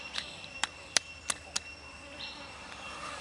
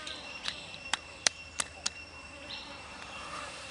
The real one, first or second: first